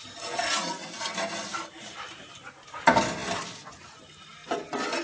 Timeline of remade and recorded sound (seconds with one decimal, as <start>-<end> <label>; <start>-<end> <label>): 0.0-1.5 recorded; 1.5-2.4 remade; 2.4-5.0 recorded